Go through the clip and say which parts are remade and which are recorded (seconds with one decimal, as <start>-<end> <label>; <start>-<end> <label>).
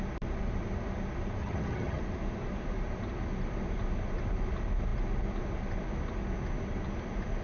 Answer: 0.0-1.4 recorded; 1.4-2.0 remade; 2.0-7.4 recorded